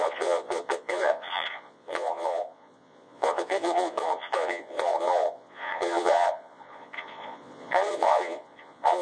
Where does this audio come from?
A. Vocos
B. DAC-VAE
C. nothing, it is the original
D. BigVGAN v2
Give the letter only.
A